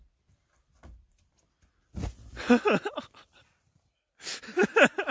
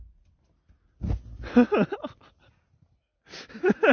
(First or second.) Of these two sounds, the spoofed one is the first